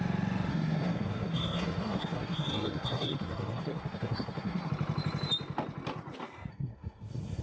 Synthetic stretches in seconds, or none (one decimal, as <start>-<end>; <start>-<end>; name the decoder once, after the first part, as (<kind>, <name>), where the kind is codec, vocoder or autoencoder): 0.5-4.7 (codec, SNAC); 6.5-7.4